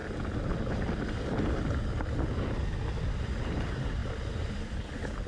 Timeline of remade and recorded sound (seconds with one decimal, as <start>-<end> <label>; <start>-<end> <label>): 0.0-4.0 recorded; 4.0-4.6 remade; 4.6-5.3 recorded